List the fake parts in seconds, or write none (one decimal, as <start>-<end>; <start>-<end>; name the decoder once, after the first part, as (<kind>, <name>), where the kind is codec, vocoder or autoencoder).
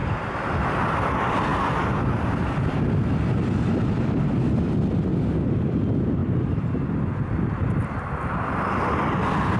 0.0-0.9 (vocoder, BigVGAN v2); 6.2-7.9